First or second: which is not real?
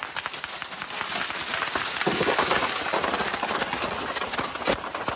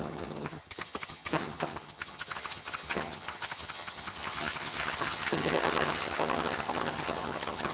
second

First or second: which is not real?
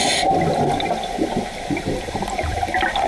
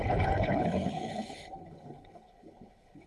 second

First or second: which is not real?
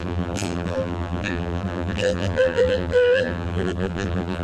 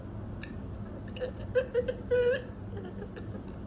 first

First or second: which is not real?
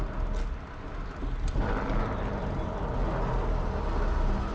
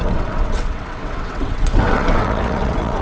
second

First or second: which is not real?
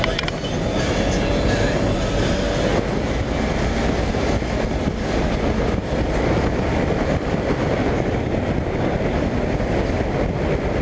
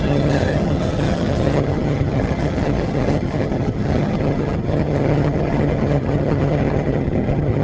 second